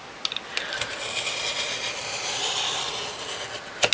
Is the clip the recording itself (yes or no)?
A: yes